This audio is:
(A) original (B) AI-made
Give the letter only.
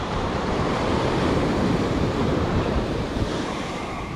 B